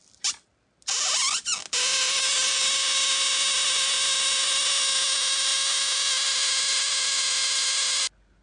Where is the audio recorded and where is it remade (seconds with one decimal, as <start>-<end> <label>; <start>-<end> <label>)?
0.0-8.4 recorded